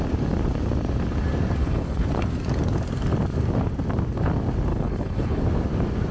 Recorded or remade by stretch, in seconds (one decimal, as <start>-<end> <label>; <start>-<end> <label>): 0.0-1.6 recorded; 1.6-2.1 remade; 2.1-4.7 recorded; 4.7-5.4 remade; 5.4-6.1 recorded